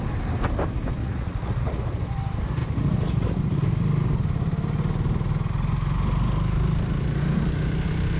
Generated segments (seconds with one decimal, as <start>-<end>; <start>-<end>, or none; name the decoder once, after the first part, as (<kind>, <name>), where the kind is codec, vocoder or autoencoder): 1.0-1.8 (vocoder, Vocos)

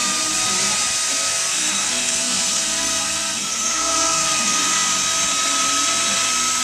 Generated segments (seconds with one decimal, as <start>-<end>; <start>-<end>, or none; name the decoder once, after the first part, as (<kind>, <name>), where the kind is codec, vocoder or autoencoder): 1.5-4.6 (codec, SNAC)

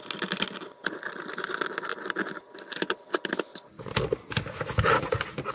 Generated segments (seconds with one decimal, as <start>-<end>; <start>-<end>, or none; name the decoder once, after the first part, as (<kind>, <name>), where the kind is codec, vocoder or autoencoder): none

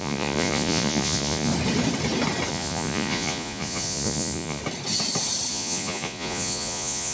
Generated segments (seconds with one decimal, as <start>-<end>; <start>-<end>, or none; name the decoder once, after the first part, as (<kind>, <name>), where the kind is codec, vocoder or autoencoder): 0.0-1.5 (vocoder, Vocos); 2.5-4.6; 5.5-7.1

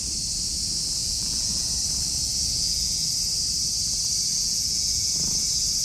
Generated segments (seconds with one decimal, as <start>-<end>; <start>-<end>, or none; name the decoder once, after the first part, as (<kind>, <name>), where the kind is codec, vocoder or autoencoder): 1.0-1.7 (vocoder, Vocos); 2.4-3.1; 4.3-5.1

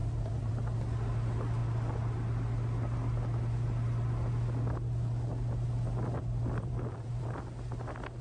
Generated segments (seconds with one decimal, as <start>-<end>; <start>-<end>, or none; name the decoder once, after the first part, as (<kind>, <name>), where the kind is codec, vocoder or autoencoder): 0.0-0.5 (vocoder, BigVGAN v2); 6.4-7.3

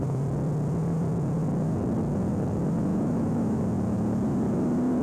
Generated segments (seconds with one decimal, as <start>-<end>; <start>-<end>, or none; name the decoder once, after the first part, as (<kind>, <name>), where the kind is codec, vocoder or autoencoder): 2.9-3.6 (autoencoder, DAC-VAE)